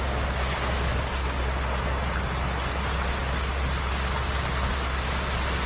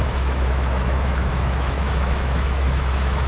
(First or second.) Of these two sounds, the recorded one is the first